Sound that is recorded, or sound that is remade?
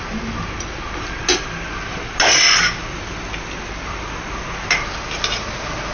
recorded